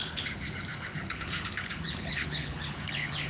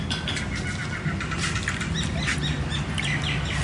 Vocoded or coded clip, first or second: first